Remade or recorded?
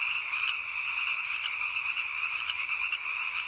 remade